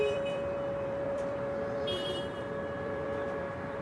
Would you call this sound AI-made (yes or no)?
yes